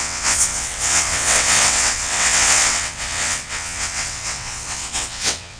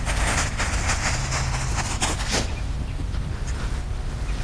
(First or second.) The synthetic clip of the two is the first